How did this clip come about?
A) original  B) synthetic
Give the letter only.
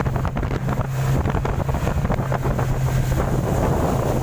A